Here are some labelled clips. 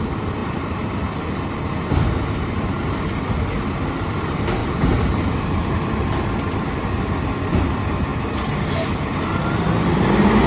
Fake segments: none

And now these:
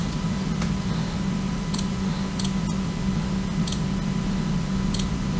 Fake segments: none

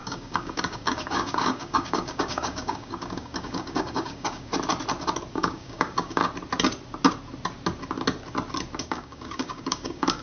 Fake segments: 0.0-4.5; 5.3-6.2; 8.8-10.2

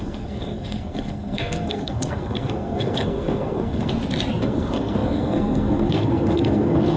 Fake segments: 0.0-3.9; 4.4-7.0

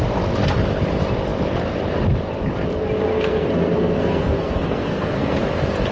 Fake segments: 3.1-5.4